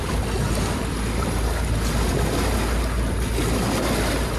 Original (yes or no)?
yes